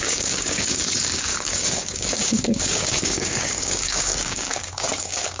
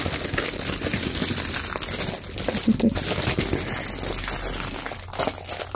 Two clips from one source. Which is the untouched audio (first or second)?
second